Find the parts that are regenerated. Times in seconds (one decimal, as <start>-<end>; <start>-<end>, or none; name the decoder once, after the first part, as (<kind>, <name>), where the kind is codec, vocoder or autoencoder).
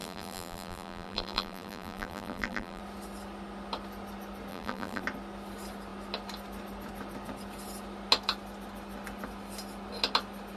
0.0-2.8 (vocoder, BigVGAN v2); 4.5-5.0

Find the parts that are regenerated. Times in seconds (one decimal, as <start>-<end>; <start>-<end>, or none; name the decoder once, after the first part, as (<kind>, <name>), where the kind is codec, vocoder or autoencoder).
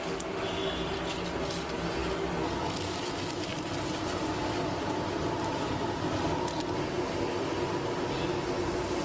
none